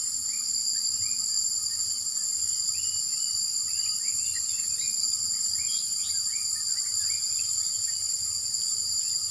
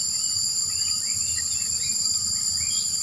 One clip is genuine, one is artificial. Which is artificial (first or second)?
second